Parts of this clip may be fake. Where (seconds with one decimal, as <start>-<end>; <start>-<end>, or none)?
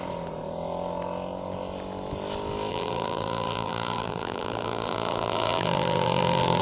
2.7-6.6